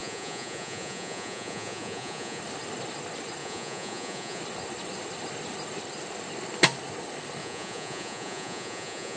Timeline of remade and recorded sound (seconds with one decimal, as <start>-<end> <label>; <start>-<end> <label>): 0.0-2.4 remade; 2.4-3.4 recorded; 3.4-4.4 remade; 4.4-7.4 recorded; 7.4-9.2 remade